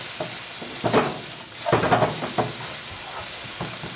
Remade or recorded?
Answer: recorded